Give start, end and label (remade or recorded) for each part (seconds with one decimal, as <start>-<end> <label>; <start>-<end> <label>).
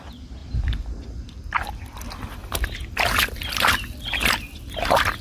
0.0-5.2 recorded